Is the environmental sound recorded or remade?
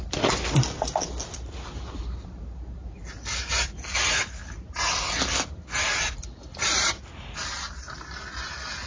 recorded